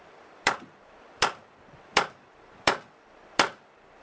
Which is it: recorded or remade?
remade